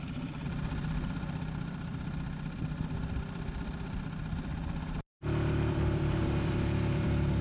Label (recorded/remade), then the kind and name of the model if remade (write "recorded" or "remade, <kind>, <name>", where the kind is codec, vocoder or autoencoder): remade, vocoder, BigVGAN v2